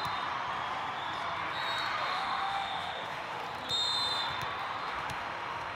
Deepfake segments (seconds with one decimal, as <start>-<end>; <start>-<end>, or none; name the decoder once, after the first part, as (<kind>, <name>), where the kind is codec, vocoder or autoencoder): 2.1-3.4 (autoencoder, DAC-VAE); 4.8-5.8